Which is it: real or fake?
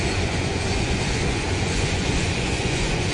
fake